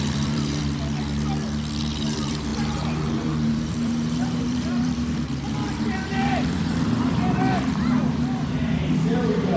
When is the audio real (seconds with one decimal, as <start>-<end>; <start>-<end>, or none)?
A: 0.6-1.8